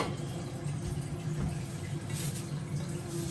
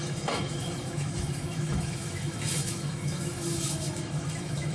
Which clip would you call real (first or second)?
first